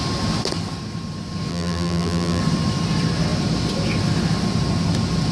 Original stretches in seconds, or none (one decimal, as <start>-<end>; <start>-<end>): 0.0-1.5; 2.4-5.3